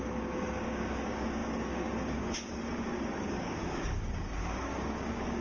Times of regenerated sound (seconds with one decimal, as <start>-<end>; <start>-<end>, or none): 0.0-5.4